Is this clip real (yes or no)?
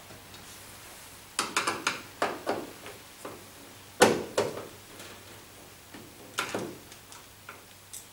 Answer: yes